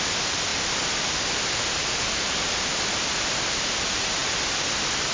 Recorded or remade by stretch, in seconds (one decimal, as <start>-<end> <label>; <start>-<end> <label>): 0.0-5.1 recorded